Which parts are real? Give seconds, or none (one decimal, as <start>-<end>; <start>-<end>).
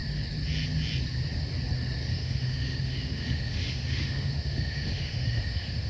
0.0-2.1